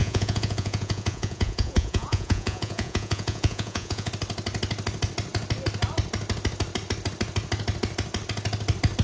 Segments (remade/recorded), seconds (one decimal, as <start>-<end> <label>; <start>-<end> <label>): 0.0-4.1 remade; 4.1-9.0 recorded